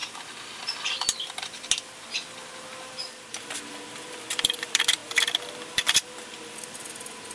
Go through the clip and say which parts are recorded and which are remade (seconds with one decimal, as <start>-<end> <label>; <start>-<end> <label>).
0.0-4.4 recorded; 4.4-5.0 remade; 5.0-7.3 recorded